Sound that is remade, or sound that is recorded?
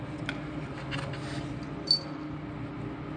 recorded